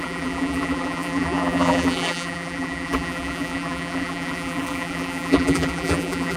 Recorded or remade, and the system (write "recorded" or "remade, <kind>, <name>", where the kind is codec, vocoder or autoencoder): remade, vocoder, BigVGAN v2